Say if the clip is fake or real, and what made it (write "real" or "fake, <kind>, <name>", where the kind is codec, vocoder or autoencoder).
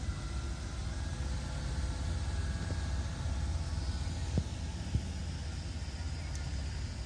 real